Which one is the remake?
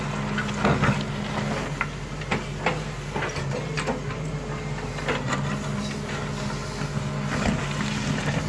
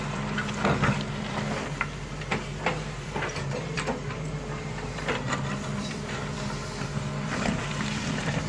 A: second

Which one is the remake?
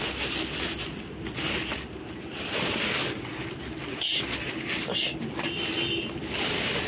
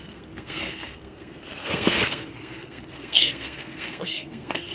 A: second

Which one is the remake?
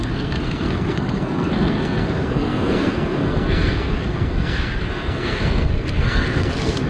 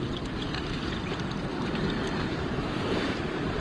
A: first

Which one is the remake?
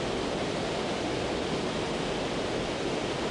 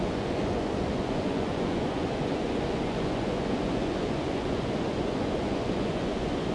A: second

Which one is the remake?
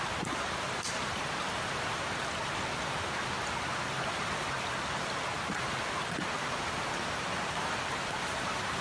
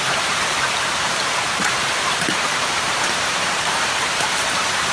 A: second